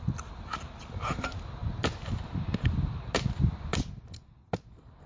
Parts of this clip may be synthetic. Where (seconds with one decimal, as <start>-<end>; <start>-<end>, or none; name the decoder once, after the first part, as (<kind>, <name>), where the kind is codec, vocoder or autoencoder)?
none